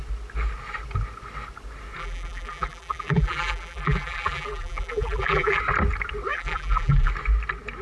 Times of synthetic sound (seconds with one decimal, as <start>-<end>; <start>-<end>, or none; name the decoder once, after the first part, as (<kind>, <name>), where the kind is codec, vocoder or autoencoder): 2.0-5.6 (vocoder, BigVGAN v2); 6.3-7.1